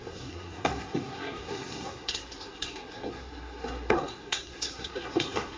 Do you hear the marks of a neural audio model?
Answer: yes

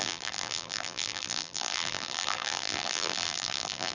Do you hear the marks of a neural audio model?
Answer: yes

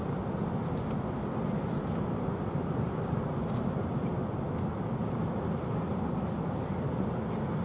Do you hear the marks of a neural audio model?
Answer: no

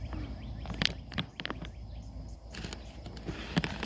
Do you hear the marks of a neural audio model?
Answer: no